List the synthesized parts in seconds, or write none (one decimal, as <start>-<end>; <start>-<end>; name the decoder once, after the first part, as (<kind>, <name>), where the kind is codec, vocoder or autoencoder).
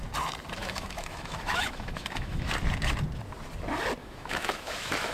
0.6-2.5 (autoencoder, DAC-VAE); 4.0-5.1